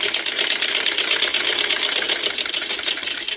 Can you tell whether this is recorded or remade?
recorded